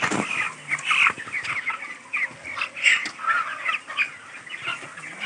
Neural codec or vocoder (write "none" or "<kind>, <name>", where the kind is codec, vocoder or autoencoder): none